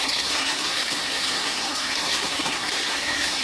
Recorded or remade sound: remade